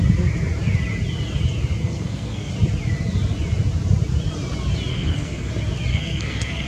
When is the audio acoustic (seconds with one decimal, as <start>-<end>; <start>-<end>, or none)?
0.0-1.8; 2.5-4.9; 5.5-5.9